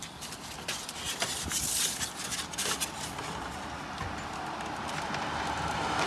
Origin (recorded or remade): recorded